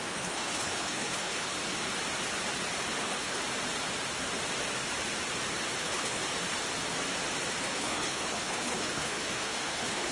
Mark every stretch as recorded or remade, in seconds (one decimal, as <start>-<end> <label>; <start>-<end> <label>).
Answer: 0.0-1.5 remade; 1.5-3.0 recorded; 3.0-3.4 remade; 3.4-5.8 recorded; 5.8-6.2 remade; 6.2-7.6 recorded; 7.6-10.1 remade

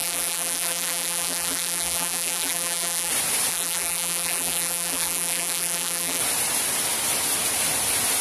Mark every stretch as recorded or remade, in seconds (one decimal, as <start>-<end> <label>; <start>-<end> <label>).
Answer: 0.0-3.1 remade; 3.1-3.5 recorded; 3.5-6.2 remade; 6.2-8.2 recorded

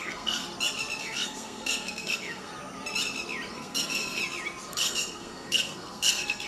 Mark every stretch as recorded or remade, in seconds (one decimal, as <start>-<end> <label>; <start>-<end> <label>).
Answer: 0.0-0.4 remade; 0.4-1.0 recorded; 1.0-2.5 remade; 2.5-3.5 recorded; 3.5-4.2 remade; 4.2-4.7 recorded; 4.7-6.5 remade